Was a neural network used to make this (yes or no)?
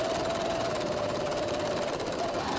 no